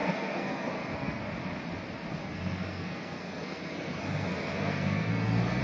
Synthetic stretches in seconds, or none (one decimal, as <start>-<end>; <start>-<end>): 0.0-1.2; 2.2-5.6